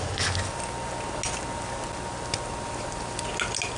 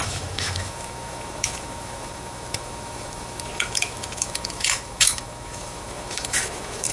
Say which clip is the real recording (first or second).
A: first